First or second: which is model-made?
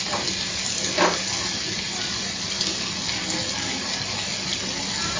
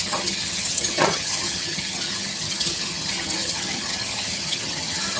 second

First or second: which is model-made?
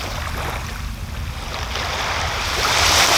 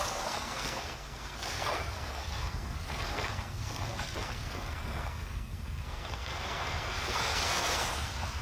second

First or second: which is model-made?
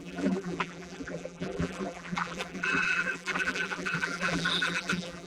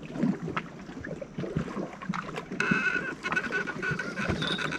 first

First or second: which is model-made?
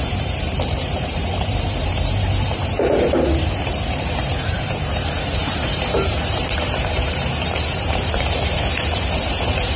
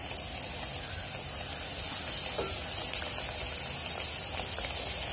first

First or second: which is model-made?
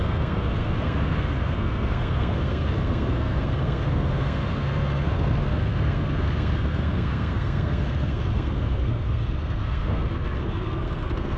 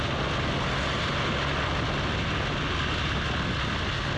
first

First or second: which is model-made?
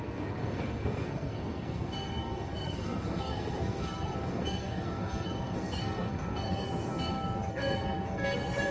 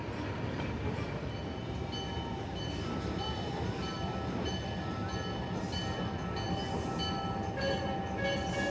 first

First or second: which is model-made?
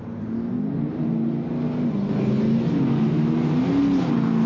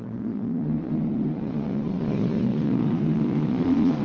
second